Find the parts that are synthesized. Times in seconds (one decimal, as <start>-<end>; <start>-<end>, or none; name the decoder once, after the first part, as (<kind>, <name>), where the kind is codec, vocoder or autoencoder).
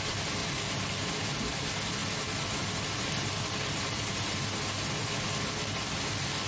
0.4-1.0 (vocoder, BigVGAN v2)